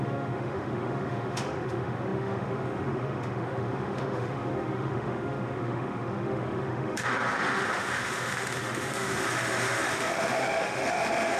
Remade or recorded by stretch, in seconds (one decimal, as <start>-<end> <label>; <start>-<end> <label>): 0.0-11.4 remade